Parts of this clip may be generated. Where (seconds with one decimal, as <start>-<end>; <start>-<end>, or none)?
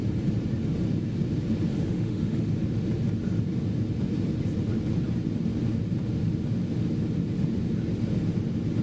1.8-2.5